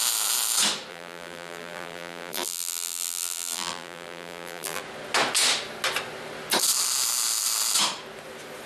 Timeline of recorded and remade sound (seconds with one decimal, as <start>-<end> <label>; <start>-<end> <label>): 0.0-0.9 recorded; 0.9-4.8 remade; 4.8-8.7 recorded